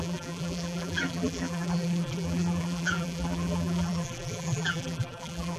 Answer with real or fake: fake